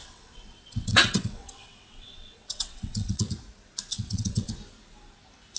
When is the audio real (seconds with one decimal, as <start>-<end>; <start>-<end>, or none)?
3.3-3.9; 4.5-5.6